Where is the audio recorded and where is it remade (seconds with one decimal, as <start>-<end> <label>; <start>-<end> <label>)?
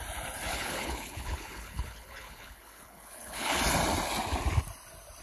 0.0-0.5 recorded; 0.5-3.6 remade; 3.6-5.2 recorded